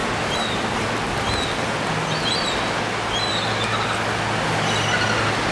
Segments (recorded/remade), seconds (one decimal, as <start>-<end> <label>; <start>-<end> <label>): 0.0-5.5 recorded